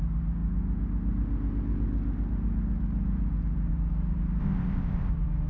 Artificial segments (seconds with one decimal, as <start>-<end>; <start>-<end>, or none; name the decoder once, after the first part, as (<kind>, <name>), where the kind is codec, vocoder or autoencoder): 4.4-5.1 (codec, ZipCodec)